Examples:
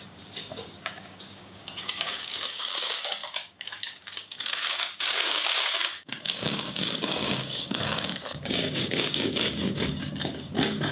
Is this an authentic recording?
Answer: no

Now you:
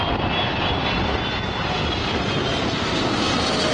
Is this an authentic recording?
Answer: yes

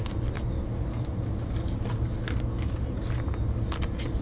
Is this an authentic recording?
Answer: yes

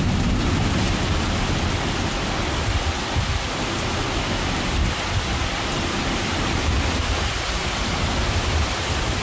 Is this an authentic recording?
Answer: yes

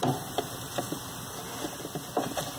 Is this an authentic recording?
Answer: yes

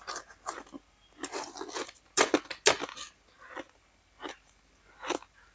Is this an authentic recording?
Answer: yes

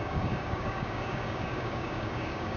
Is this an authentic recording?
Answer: no